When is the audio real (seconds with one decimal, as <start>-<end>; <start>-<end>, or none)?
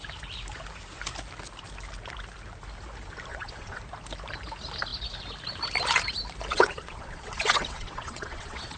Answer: 0.0-3.3; 3.8-6.5